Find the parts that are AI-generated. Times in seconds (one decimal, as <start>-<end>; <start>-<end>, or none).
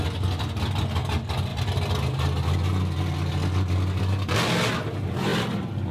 none